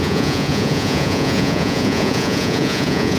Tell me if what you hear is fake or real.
fake